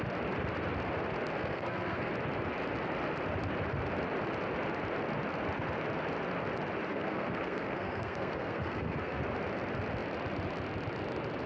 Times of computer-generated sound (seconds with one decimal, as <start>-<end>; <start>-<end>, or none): 1.4-2.1; 6.9-9.2